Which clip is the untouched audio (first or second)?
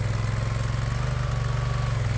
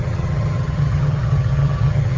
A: first